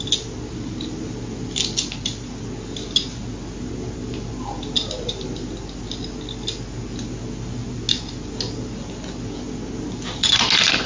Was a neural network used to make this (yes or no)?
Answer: no